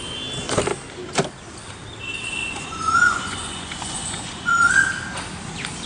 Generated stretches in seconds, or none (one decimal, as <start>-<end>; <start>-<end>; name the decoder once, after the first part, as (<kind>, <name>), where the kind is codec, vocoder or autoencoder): 2.4-4.7 (vocoder, Vocos)